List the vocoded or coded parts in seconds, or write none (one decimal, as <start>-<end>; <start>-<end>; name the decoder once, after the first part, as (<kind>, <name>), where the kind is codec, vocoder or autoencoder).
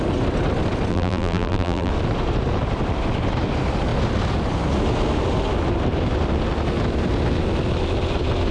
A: 0.9-1.9 (vocoder, BigVGAN v2)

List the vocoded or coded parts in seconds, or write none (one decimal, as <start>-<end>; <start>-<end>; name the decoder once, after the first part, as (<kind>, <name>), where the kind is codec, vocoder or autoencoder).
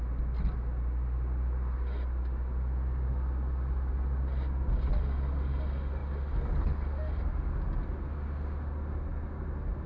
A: none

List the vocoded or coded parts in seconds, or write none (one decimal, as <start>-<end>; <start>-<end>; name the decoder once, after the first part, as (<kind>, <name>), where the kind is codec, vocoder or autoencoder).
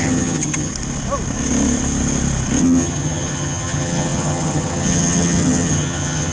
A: 0.0-0.7 (vocoder, HiFi-GAN); 2.6-6.3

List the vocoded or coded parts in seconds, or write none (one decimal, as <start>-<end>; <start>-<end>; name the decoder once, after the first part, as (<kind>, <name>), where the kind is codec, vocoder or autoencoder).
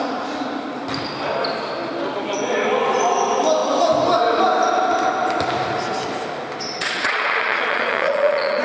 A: 6.8-8.6 (vocoder, Vocos)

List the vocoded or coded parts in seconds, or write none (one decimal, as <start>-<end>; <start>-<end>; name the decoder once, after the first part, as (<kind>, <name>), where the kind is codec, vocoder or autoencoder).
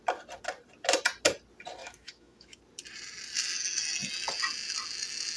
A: 1.8-2.6 (autoencoder, DAC-VAE)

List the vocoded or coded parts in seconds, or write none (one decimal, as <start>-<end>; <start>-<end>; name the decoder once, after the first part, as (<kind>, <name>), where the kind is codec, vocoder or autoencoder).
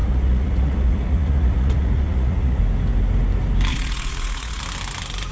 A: 0.0-2.6 (vocoder, Vocos); 3.7-4.6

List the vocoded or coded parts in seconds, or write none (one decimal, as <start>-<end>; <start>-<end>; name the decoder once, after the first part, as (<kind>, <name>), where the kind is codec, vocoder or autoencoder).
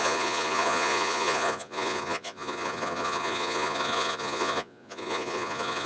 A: 0.0-5.9 (vocoder, Vocos)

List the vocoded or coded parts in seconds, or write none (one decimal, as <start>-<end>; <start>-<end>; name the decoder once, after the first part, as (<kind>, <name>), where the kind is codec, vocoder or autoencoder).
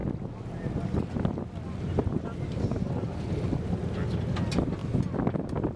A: none